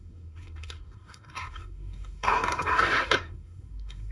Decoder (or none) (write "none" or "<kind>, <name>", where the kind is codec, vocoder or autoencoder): codec, SNAC